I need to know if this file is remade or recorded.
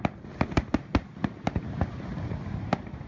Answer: recorded